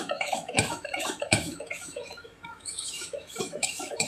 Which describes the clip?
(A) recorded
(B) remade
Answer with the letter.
B